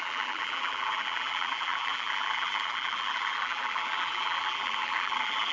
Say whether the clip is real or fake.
fake